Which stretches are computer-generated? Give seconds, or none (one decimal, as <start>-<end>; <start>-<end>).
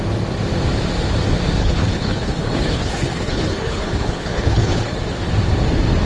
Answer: 1.6-5.3